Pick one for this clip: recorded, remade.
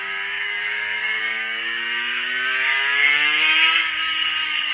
remade